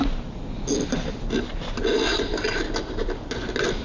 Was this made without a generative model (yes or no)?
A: yes